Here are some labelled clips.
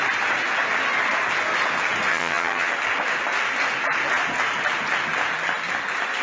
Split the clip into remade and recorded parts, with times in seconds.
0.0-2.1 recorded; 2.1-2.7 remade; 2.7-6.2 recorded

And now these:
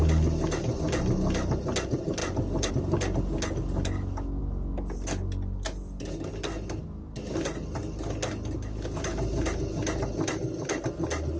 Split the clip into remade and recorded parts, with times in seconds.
0.0-11.4 recorded

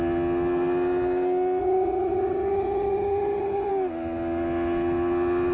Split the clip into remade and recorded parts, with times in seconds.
0.0-1.6 recorded; 1.6-3.7 remade; 3.7-5.5 recorded